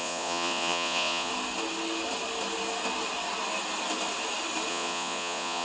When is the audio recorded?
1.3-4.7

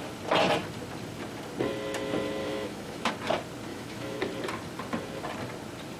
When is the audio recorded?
0.0-2.4; 3.1-3.7; 4.2-6.0